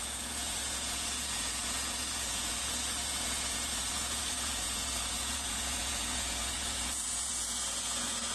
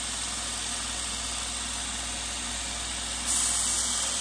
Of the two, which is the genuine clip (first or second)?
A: second